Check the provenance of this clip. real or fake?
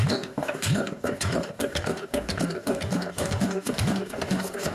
fake